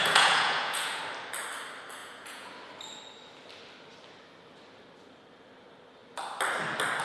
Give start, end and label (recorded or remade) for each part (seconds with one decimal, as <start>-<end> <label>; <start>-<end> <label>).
0.0-1.0 remade; 1.0-2.0 recorded; 2.0-2.5 remade; 2.5-7.0 recorded